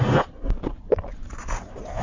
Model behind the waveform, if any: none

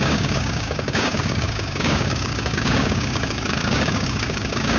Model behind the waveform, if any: codec, DAC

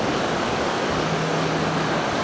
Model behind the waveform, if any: codec, DAC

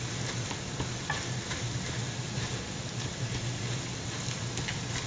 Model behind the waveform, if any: none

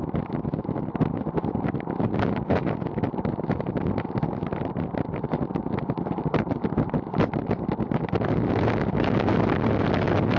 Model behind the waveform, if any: none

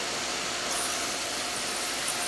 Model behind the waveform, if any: none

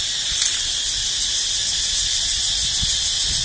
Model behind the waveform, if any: none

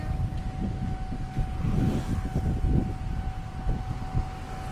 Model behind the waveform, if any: none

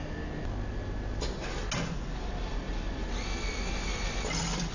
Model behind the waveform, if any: none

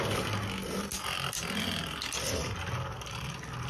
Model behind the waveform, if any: none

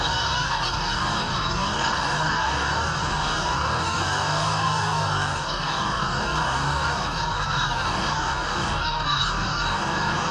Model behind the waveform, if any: codec, DAC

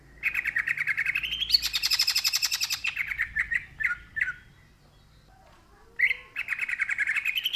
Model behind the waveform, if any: none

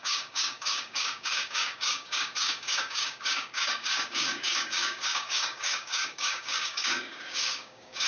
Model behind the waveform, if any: codec, DAC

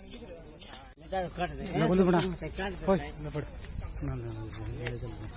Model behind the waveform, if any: none